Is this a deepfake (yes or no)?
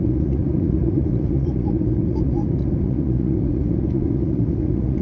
yes